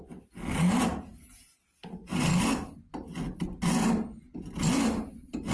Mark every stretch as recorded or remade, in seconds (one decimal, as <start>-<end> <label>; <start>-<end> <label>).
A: 0.0-5.5 recorded